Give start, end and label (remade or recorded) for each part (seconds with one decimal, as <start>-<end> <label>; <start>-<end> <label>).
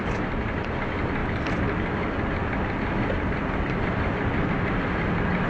0.0-1.2 recorded; 1.2-4.5 remade; 4.5-5.5 recorded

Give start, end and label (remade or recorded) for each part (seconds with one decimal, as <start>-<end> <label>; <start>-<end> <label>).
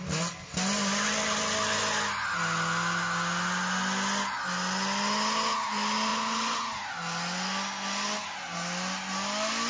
0.0-9.7 recorded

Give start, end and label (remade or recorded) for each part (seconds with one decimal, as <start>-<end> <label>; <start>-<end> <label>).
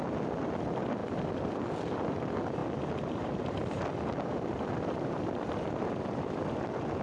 0.0-1.0 recorded; 1.0-2.2 remade; 2.2-2.6 recorded; 2.6-7.0 remade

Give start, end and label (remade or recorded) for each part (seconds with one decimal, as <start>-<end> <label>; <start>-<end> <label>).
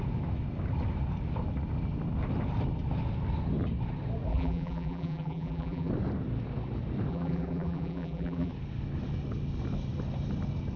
0.0-4.3 recorded; 4.3-5.9 remade; 5.9-7.1 recorded; 7.1-8.5 remade; 8.5-10.8 recorded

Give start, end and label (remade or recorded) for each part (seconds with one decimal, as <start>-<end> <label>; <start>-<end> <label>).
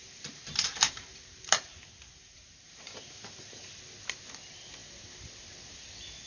0.0-3.8 remade; 3.8-6.3 recorded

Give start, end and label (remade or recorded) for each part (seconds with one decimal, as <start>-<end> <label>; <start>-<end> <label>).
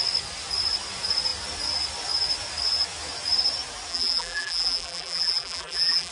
0.0-3.9 recorded; 3.9-6.1 remade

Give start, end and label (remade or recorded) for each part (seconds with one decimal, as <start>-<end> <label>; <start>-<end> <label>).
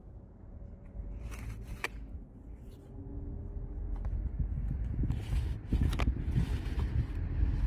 0.0-2.8 remade; 2.8-7.7 recorded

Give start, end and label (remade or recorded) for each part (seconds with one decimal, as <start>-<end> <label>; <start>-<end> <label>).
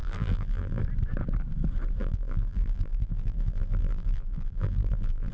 0.0-0.8 remade; 0.8-2.0 recorded; 2.0-5.3 remade